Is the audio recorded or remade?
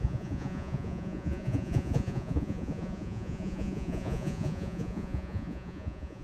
remade